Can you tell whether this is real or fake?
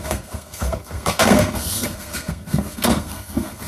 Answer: fake